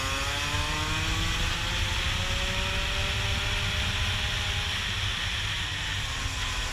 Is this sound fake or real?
real